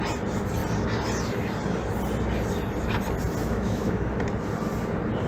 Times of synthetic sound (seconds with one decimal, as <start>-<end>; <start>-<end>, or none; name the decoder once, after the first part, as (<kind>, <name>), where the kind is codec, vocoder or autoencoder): 3.4-4.2 (autoencoder, DAC-VAE)